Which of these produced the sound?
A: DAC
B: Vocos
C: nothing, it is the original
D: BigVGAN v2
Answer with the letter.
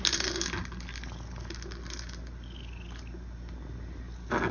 C